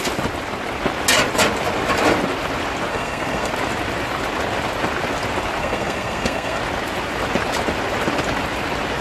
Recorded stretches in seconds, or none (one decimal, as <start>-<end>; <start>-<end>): 0.0-2.9; 3.5-5.6; 6.6-9.0